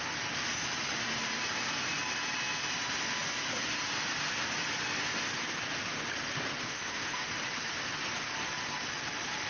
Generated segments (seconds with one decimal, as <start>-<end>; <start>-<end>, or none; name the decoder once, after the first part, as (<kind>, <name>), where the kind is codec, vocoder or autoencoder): 6.6-7.2 (autoencoder, DAC-VAE)